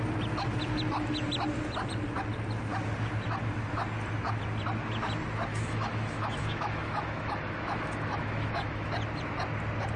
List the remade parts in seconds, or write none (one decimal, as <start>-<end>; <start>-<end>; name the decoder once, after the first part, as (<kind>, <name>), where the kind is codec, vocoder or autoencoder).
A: 5.5-8.9 (autoencoder, DAC-VAE)